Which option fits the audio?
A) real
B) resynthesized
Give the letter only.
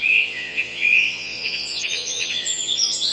B